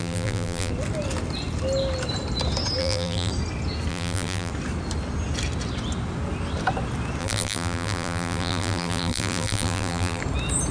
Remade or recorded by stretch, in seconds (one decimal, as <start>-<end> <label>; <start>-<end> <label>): 0.0-0.7 remade; 0.7-2.8 recorded; 2.8-3.3 remade; 3.3-3.9 recorded; 3.9-4.5 remade; 4.5-7.2 recorded; 7.2-10.2 remade; 10.2-10.7 recorded